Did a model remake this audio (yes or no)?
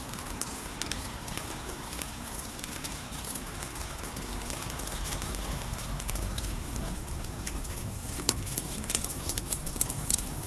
yes